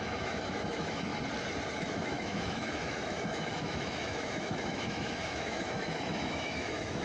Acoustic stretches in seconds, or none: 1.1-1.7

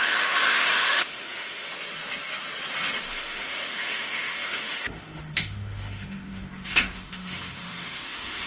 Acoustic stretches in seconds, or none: 1.7-3.1

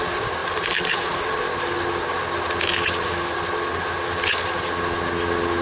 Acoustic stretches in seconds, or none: 0.0-5.6

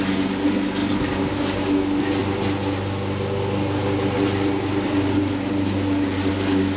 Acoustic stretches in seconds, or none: 0.0-6.8

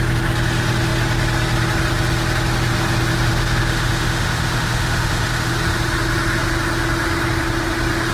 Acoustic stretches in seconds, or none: 0.0-3.3; 5.5-8.1

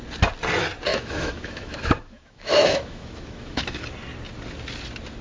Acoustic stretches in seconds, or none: 0.0-0.9; 3.8-5.2

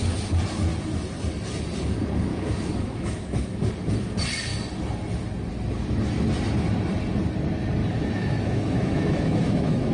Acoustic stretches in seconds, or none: 0.0-2.3; 3.7-7.8